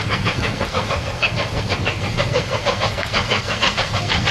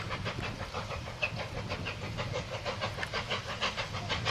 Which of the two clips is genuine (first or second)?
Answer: second